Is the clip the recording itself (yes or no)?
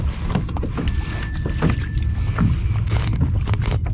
yes